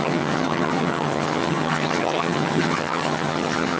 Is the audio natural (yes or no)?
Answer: no